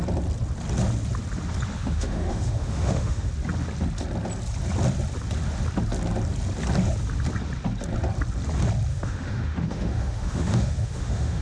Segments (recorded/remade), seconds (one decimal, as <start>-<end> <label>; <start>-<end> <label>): 0.0-1.7 recorded; 1.7-3.3 remade; 3.3-8.9 recorded; 8.9-11.4 remade

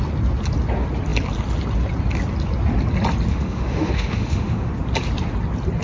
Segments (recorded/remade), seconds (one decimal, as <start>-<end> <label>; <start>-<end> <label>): 0.0-3.3 recorded; 3.3-4.7 remade; 4.7-5.8 recorded

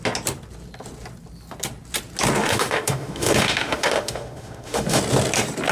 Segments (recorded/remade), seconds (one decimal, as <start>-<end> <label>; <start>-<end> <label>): 0.0-2.4 recorded; 2.4-5.0 remade; 5.0-5.7 recorded

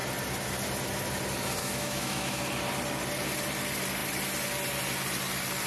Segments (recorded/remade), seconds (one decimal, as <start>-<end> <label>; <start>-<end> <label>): 0.0-1.6 recorded; 1.6-2.4 remade; 2.4-5.7 recorded

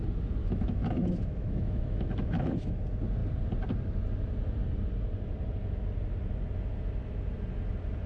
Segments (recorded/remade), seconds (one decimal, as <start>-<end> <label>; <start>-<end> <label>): 0.0-0.4 recorded; 0.4-2.8 remade; 2.8-8.1 recorded

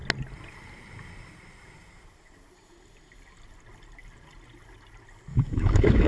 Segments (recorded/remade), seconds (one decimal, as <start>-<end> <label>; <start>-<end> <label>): 0.0-5.3 recorded; 5.3-6.1 remade

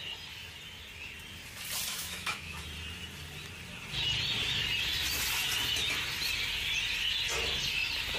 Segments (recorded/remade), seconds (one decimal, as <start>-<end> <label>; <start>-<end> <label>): 0.0-1.9 recorded; 1.9-2.6 remade; 2.6-8.2 recorded